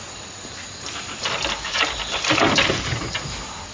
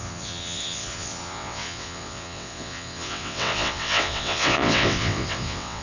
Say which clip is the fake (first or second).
second